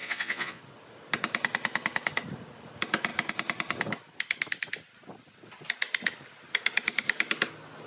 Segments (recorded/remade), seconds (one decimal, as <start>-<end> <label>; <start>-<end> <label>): 0.0-0.6 remade; 0.6-7.9 recorded

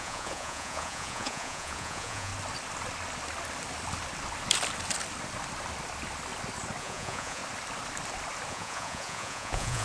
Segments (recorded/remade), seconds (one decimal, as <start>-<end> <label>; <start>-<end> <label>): 0.0-2.3 remade; 2.3-6.8 recorded; 6.8-7.4 remade; 7.4-8.5 recorded; 8.5-9.8 remade